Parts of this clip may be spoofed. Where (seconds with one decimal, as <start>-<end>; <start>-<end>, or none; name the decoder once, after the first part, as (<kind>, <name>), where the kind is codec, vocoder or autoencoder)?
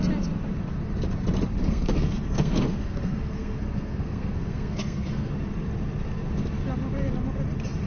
1.6-5.3 (codec, SNAC)